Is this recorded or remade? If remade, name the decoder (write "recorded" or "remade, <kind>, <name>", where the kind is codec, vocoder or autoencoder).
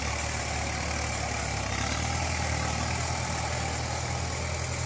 recorded